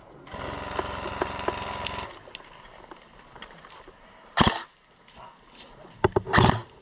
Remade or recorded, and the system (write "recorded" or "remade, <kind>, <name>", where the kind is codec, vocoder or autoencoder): recorded